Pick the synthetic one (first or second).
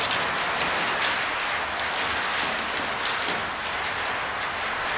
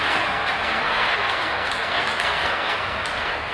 second